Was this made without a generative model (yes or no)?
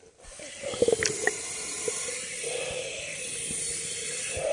no